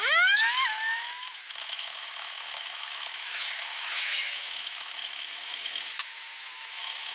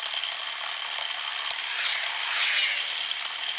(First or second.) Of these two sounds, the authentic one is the second